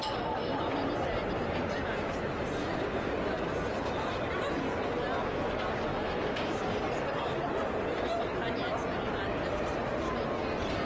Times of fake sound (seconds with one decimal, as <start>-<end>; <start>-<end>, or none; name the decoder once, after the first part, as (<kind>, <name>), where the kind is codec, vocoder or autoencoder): 5.9-6.6 (autoencoder, DAC-VAE)